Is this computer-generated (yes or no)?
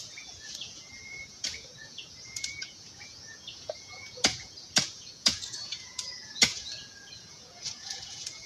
yes